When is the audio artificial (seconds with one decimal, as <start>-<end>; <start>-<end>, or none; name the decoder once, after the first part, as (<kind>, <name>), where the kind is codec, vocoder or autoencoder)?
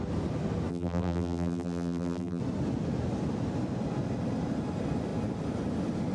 0.7-2.4 (vocoder, BigVGAN v2)